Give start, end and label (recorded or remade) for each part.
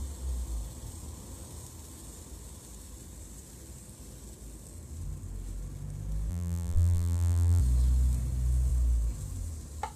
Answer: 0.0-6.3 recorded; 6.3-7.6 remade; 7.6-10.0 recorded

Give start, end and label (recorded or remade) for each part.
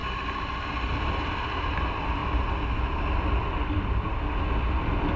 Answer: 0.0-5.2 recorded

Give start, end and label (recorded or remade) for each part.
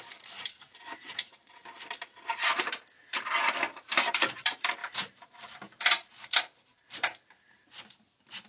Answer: 0.0-8.5 remade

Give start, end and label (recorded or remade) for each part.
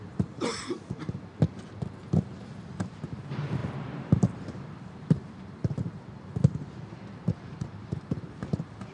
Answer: 0.0-0.5 remade; 0.5-2.2 recorded; 2.2-8.9 remade